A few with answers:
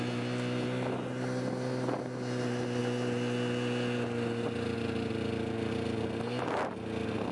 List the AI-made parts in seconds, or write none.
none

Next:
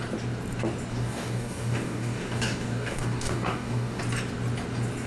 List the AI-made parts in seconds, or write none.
0.9-4.0 (codec, DAC)

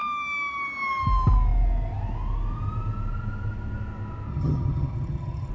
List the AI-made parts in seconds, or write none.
4.3-5.5 (vocoder, HiFi-GAN)

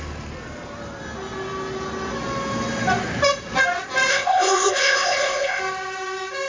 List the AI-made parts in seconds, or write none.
4.1-5.6 (codec, ZipCodec)